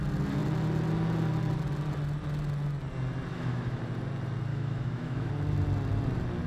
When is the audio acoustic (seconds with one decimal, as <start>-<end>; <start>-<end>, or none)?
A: 0.0-3.3; 3.8-4.5; 5.3-6.5